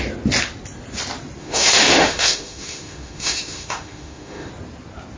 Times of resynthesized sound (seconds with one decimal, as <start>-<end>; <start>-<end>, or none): 1.4-4.5